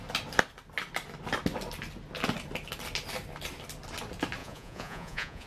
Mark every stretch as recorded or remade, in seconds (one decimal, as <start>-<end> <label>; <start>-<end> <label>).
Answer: 0.0-4.4 recorded; 4.4-5.5 remade

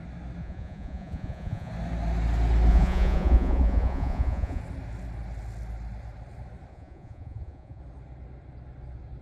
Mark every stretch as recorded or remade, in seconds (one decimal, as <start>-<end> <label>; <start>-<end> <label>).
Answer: 0.0-0.4 recorded; 0.4-1.7 remade; 1.7-2.7 recorded; 2.7-4.6 remade; 4.6-6.7 recorded; 6.7-7.8 remade; 7.8-9.2 recorded

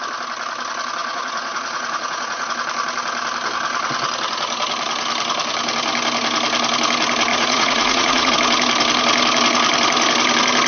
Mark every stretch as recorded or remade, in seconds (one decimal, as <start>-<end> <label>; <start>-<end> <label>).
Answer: 0.0-1.0 recorded; 1.0-2.5 remade; 2.5-7.3 recorded; 7.3-8.3 remade; 8.3-10.7 recorded

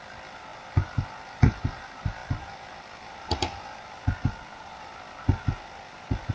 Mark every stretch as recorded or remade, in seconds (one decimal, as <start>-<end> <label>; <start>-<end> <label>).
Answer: 0.0-6.3 recorded